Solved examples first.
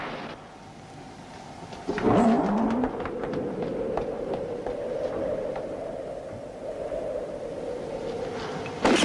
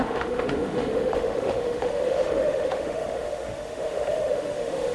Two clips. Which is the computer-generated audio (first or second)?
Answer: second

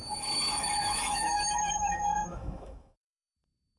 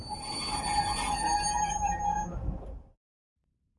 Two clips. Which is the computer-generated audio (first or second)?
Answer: first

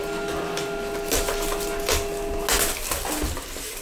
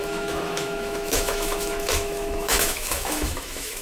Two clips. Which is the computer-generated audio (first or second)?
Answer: second